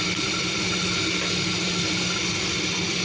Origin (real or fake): real